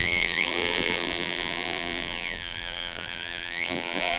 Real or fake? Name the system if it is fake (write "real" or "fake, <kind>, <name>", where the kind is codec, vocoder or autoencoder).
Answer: fake, vocoder, BigVGAN v2